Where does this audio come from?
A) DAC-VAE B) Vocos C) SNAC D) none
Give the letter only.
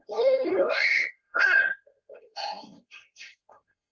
C